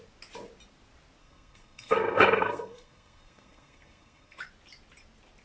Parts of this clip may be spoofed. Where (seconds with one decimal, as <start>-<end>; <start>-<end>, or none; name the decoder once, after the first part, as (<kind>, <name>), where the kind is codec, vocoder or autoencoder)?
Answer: 1.2-4.4 (codec, SNAC)